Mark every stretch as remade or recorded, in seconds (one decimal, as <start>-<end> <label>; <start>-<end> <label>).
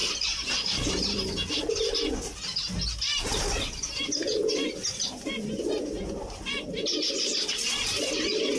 0.0-0.9 remade; 0.9-8.6 recorded